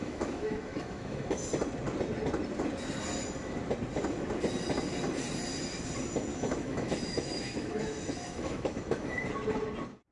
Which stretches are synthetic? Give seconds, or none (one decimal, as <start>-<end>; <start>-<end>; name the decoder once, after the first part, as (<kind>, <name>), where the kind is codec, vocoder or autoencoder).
0.0-1.5 (autoencoder, DAC-VAE); 6.3-9.3